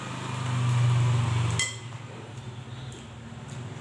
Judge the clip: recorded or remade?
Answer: recorded